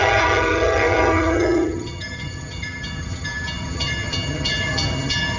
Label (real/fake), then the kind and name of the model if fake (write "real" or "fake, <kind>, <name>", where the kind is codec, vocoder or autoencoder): fake, vocoder, HiFi-GAN